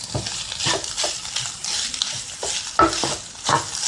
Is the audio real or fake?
real